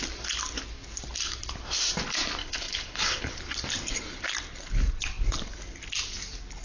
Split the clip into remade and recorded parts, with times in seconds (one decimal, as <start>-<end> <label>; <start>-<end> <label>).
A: 0.0-2.4 recorded; 2.4-3.3 remade; 3.3-6.6 recorded